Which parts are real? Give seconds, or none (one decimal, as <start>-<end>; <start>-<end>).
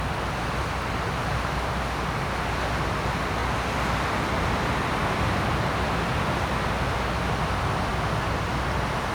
0.0-9.1